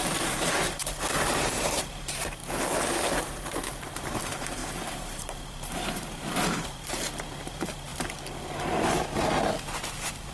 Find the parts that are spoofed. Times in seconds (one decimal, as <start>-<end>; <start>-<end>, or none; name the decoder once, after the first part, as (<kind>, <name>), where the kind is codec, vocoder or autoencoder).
0.0-2.4 (vocoder, BigVGAN v2); 3.2-7.9; 9.3-10.3